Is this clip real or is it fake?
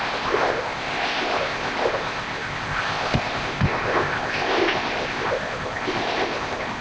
fake